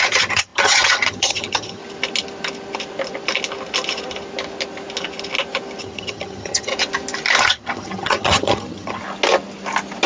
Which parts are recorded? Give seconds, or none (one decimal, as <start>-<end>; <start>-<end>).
1.8-5.8; 6.7-7.4; 9.0-10.1